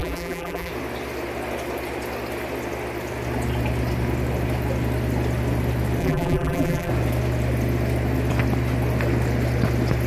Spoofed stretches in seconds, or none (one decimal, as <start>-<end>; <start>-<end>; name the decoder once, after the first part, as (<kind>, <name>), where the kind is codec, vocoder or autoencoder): 0.0-0.7 (vocoder, BigVGAN v2); 6.0-6.9